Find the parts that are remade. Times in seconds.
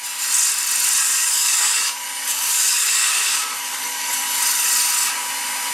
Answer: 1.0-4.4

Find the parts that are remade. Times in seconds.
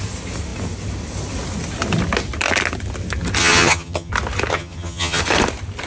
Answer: 3.4-4.1; 4.5-5.2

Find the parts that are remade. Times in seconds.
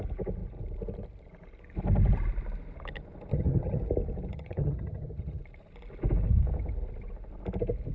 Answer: 3.3-3.8; 4.3-5.4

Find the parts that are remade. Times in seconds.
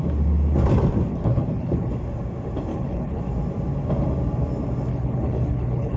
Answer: 1.1-1.9; 2.7-3.2; 4.9-6.0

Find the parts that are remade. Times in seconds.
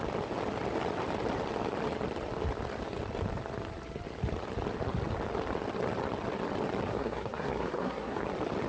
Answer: 6.9-8.2